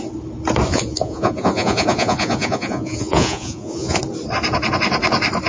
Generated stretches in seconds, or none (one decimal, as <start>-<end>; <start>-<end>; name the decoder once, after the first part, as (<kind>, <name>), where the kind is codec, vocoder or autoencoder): 0.7-4.0 (vocoder, Vocos)